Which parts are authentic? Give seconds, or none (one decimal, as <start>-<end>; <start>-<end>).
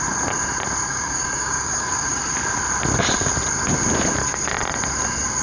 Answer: 0.0-0.9; 2.2-5.4